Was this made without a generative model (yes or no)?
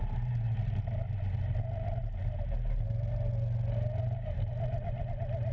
yes